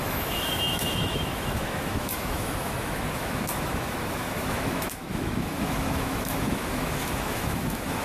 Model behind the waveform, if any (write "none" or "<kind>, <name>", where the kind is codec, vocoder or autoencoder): autoencoder, DAC-VAE